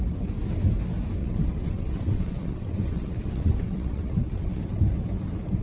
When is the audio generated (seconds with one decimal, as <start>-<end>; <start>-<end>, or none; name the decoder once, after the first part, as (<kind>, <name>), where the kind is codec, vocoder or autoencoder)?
1.2-4.6 (vocoder, WaveNeXt)